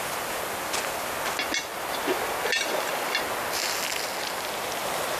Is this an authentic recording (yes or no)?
yes